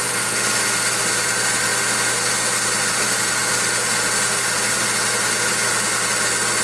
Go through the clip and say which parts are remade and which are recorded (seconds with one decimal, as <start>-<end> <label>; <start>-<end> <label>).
0.0-6.6 recorded